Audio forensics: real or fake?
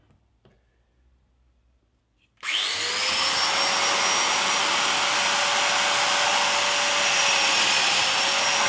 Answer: real